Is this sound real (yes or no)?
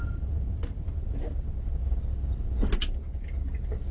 yes